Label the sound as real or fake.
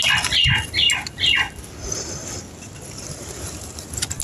real